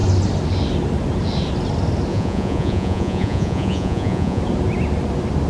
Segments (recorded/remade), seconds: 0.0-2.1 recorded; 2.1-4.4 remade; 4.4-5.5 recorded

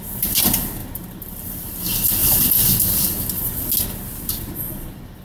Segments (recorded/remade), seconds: 0.0-0.8 recorded; 0.8-1.8 remade; 1.8-2.2 recorded; 2.2-3.0 remade; 3.0-5.2 recorded

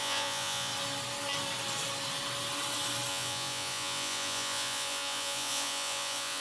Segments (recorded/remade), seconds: 0.0-0.7 remade; 0.7-3.1 recorded; 3.1-6.4 remade

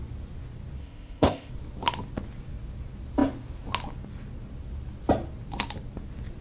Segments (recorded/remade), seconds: 0.0-0.8 recorded; 0.8-1.5 remade; 1.5-6.4 recorded